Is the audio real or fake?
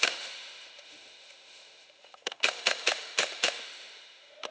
fake